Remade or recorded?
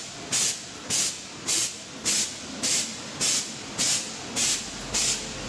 recorded